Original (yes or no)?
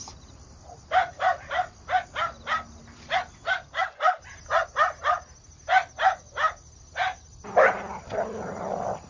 yes